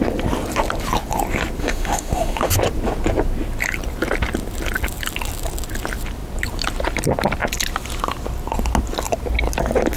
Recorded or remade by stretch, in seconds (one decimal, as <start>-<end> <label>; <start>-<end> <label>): 0.0-1.6 recorded; 1.6-2.5 remade; 2.5-10.0 recorded